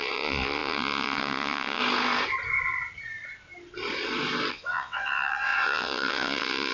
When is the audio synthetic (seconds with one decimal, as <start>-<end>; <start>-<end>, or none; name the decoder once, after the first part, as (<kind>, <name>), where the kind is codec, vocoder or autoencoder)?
0.0-1.8 (vocoder, WaveNeXt); 4.5-6.7